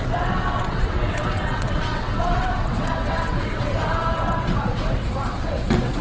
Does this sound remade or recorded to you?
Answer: remade